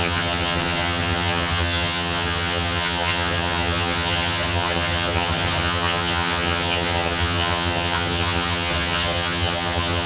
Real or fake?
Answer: fake